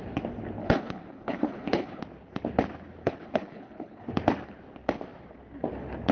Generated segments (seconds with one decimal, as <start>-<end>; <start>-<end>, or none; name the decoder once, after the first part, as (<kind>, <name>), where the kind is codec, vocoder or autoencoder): 0.6-2.0 (codec, HILCodec); 3.0-4.1